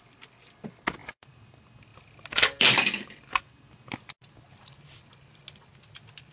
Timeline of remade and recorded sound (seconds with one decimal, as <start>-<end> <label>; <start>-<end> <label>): 0.0-1.0 recorded; 1.0-1.5 remade; 1.5-6.3 recorded